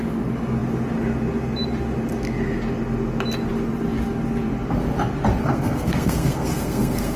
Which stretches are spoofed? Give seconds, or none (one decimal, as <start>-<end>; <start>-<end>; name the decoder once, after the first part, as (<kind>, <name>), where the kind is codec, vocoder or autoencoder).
5.4-7.2 (codec, SNAC)